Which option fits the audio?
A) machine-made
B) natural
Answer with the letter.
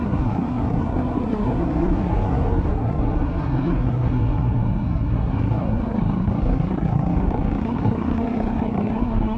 A